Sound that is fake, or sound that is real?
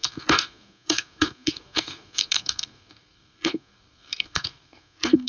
fake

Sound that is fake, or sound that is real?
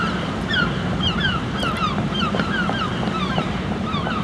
fake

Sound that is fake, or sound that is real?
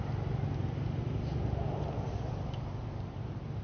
real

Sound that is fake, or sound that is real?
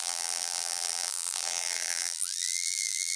fake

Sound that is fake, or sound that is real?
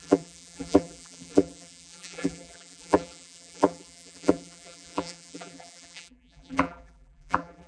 fake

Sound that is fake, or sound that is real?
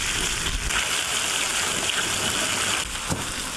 real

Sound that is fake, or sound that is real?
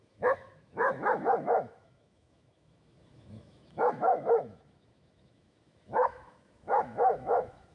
fake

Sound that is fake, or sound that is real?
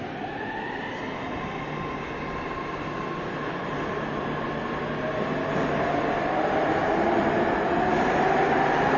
real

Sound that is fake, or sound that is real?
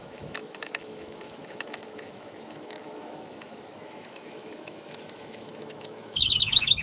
fake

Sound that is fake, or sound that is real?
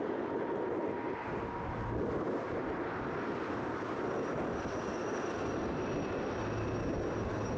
real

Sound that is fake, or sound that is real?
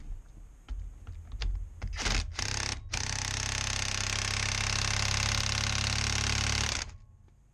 real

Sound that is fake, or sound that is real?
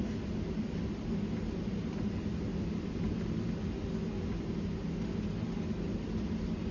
real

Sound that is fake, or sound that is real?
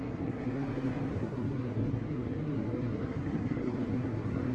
fake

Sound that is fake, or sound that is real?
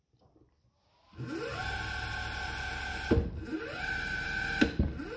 real